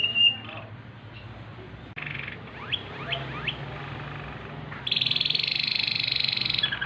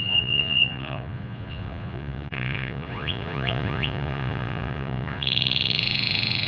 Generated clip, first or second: second